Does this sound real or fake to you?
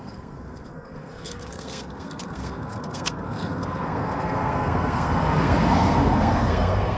fake